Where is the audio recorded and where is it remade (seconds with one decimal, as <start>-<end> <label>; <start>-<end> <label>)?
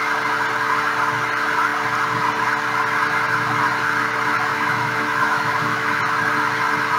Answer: 0.0-4.5 recorded; 4.5-6.0 remade; 6.0-7.0 recorded